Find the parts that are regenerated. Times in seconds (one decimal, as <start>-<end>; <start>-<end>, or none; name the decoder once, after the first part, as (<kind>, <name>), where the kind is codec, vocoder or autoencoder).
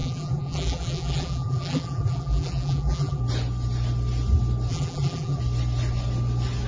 0.0-3.2 (vocoder, BigVGAN v2); 4.7-5.4